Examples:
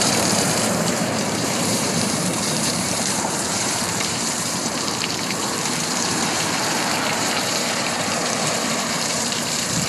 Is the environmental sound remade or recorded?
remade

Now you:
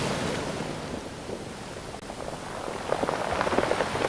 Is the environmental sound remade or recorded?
recorded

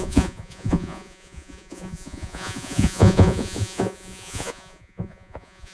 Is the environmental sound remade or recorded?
remade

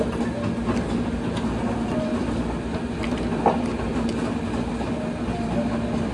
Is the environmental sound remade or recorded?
recorded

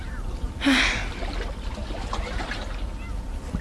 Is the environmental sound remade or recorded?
recorded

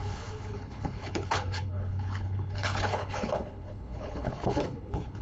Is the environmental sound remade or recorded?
remade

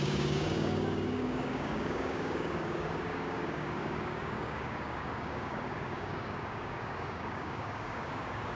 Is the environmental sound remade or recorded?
remade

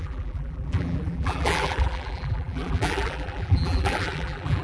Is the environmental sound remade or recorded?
remade